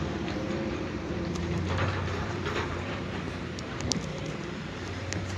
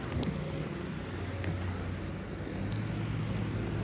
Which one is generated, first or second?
first